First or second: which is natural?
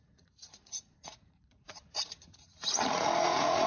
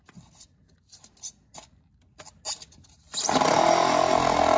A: second